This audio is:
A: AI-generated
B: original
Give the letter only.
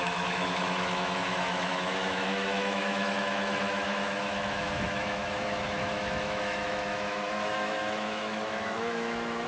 A